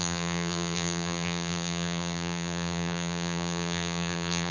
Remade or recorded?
remade